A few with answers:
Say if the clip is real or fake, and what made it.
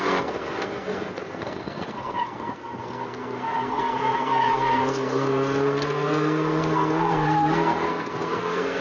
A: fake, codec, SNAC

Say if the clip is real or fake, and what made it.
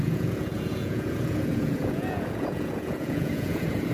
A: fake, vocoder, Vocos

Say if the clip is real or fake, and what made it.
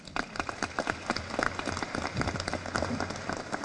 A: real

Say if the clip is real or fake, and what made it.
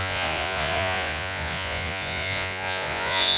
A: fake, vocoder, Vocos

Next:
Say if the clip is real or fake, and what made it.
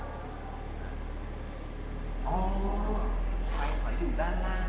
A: real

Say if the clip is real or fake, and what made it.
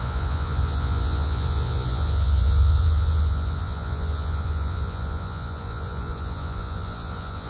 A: fake, vocoder, Vocos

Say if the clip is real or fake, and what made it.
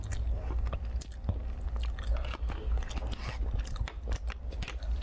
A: real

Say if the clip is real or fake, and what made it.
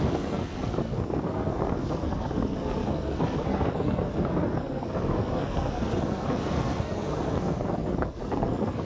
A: fake, codec, SNAC